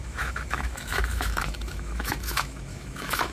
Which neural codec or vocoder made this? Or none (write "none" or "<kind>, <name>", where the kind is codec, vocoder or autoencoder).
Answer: autoencoder, DAC-VAE